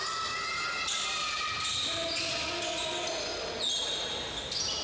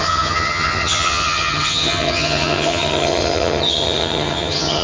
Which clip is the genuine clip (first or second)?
first